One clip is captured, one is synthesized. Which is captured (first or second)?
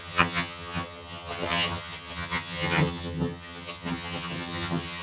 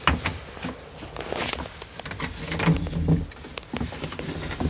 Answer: second